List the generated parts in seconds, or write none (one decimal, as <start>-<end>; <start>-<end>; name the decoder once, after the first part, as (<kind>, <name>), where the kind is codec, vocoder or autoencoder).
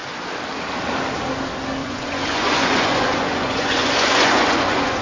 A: 1.8-5.0 (vocoder, Vocos)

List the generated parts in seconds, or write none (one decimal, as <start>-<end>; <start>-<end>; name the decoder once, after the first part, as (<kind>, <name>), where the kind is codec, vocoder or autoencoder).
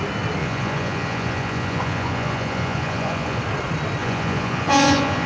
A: 0.4-3.4 (vocoder, Vocos); 4.0-5.3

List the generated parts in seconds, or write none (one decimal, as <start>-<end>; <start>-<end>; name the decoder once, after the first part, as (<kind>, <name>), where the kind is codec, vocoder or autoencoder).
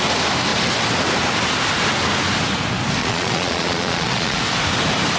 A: 3.0-4.4 (vocoder, Vocos)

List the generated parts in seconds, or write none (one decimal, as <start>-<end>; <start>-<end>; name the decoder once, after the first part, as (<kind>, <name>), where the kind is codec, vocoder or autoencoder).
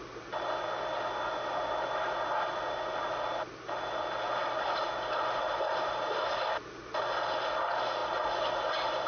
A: none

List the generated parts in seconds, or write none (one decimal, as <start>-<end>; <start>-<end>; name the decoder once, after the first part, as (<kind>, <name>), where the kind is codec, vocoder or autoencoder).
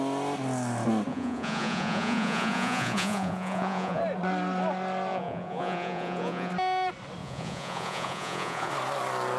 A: 1.1-4.0 (vocoder, Vocos); 5.1-6.5; 7.2-8.7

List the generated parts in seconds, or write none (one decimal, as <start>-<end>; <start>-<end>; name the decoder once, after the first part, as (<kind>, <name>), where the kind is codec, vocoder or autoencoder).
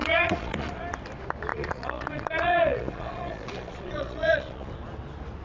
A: 0.0-0.8 (vocoder, Vocos); 1.5-4.7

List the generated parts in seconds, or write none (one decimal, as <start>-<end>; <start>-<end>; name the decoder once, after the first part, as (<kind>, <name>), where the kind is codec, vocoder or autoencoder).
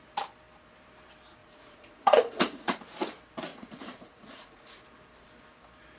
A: 1.4-2.8 (vocoder, Vocos); 3.5-4.8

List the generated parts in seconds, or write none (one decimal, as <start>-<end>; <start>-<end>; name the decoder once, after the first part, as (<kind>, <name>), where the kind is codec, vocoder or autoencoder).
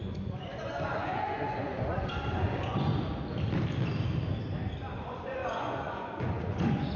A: 0.0-2.9 (vocoder, Vocos); 4.9-7.0